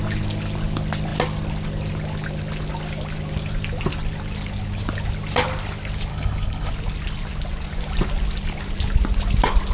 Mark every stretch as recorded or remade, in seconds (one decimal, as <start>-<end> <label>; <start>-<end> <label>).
0.0-6.1 recorded; 6.1-6.7 remade; 6.7-9.7 recorded